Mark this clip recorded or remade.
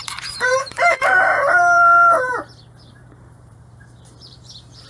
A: remade